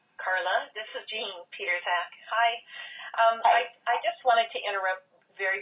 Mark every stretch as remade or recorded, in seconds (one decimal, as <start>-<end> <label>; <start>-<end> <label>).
0.0-5.6 recorded